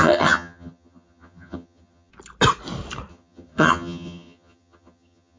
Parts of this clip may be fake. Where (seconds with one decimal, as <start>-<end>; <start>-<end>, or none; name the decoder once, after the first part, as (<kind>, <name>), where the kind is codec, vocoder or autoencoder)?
0.0-2.1 (vocoder, HiFi-GAN); 3.1-5.4

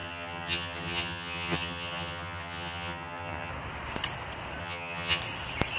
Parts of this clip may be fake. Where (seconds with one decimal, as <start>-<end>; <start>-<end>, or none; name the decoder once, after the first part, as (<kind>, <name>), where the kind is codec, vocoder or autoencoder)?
0.0-3.5 (vocoder, HiFi-GAN); 4.6-5.2

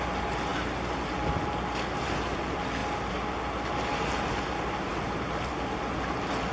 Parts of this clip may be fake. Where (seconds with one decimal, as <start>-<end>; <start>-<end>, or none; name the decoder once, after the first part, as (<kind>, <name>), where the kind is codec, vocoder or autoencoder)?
none